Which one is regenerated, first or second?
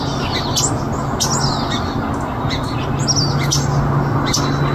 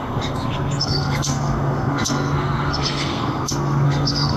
second